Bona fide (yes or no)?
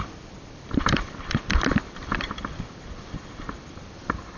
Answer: no